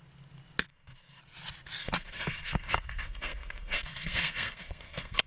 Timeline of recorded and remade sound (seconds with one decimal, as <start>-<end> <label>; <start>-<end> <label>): 0.0-0.7 recorded; 0.7-1.2 remade; 1.2-1.8 recorded; 1.8-5.3 remade